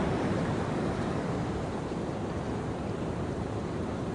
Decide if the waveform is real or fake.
fake